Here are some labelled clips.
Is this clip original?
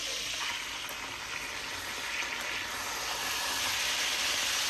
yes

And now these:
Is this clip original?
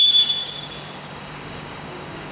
no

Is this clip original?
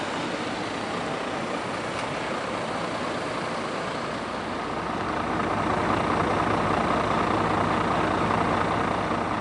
yes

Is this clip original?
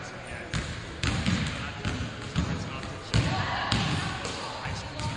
yes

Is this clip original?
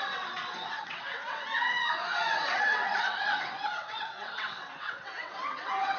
no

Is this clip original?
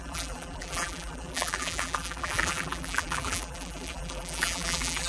no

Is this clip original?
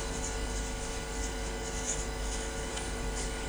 no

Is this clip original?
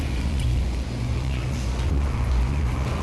no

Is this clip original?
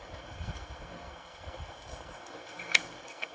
no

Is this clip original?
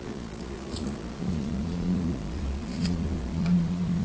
no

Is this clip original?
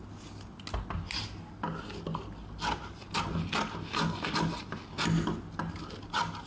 yes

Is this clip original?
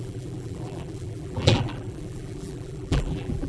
no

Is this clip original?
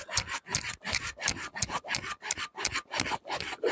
yes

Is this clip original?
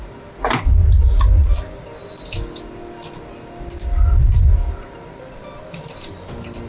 yes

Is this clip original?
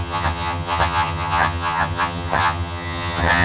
no